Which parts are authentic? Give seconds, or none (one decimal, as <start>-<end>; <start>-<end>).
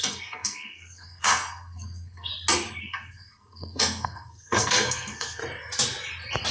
2.3-2.8; 5.4-6.5